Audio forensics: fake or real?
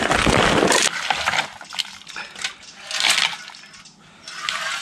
real